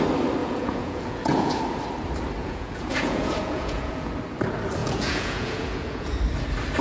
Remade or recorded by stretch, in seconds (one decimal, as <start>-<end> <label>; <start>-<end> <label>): 0.0-0.4 recorded; 0.4-1.6 remade; 1.6-2.4 recorded; 2.4-4.1 remade; 4.1-4.8 recorded; 4.8-6.2 remade; 6.2-6.8 recorded